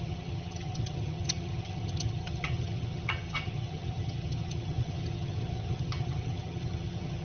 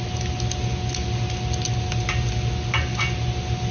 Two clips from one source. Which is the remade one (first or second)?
first